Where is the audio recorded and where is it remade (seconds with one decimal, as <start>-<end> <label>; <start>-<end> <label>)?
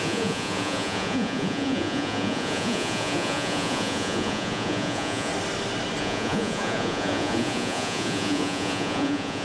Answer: 0.0-5.3 remade; 5.3-6.0 recorded; 6.0-9.4 remade